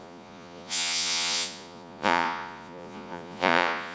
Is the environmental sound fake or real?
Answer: fake